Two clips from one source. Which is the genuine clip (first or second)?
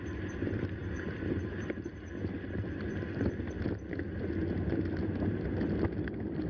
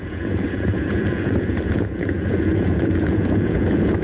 first